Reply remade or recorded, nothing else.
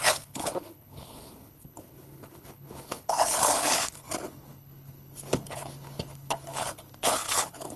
remade